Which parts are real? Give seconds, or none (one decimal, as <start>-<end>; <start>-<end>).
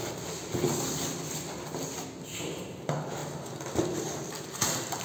0.0-5.0